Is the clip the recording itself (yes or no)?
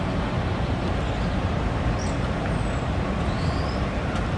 yes